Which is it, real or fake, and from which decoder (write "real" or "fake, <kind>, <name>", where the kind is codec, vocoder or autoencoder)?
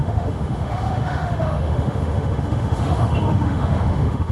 fake, autoencoder, DAC-VAE